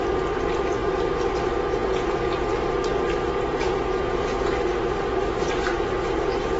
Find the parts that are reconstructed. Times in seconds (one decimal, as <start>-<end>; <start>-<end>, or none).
1.8-2.4; 3.5-4.5